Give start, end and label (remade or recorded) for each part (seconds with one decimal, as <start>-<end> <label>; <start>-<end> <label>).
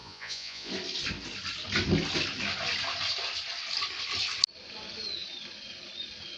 0.0-0.7 remade; 0.7-6.4 recorded